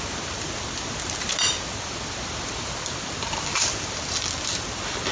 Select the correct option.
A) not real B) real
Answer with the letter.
B